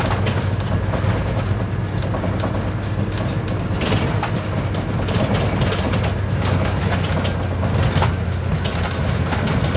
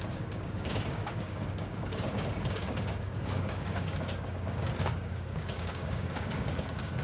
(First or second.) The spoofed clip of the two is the second